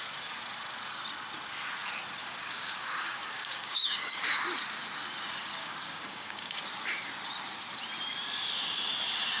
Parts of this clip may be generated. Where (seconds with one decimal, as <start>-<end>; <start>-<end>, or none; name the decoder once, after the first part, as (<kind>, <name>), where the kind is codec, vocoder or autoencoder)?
2.2-4.4 (codec, DAC); 5.6-6.6